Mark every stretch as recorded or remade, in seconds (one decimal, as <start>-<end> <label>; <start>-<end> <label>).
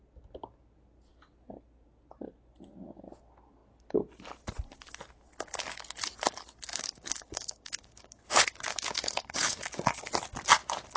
0.0-6.7 recorded; 6.7-8.2 remade; 8.2-8.7 recorded; 8.7-10.1 remade; 10.1-11.0 recorded